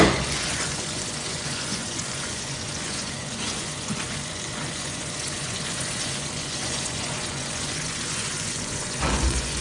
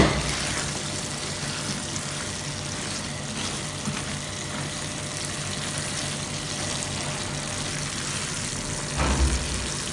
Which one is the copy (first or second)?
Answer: first